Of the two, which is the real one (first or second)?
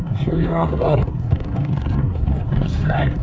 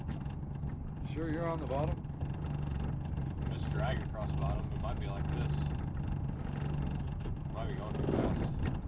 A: second